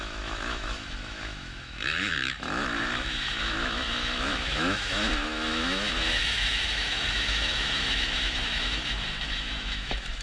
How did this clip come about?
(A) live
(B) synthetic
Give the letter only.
B